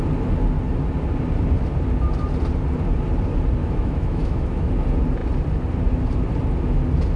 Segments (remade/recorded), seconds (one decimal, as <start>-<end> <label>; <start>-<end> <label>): 0.0-3.6 recorded; 3.6-4.7 remade; 4.7-7.2 recorded